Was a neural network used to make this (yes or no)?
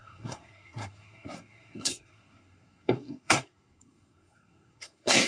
yes